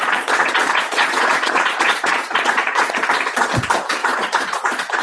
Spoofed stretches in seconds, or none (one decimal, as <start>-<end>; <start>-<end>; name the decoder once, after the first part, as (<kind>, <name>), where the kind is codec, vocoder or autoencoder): 0.0-3.0 (vocoder, Vocos); 4.0-5.0